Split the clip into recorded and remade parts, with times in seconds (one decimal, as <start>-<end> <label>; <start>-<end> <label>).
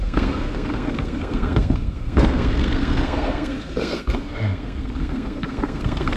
0.0-6.2 remade